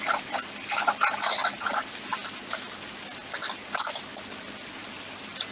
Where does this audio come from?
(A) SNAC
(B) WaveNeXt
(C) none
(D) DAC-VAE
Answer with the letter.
C